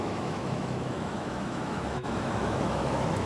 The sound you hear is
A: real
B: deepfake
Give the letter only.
B